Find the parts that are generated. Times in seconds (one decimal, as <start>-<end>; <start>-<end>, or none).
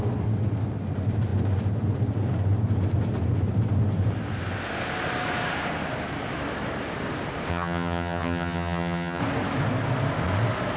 7.5-9.2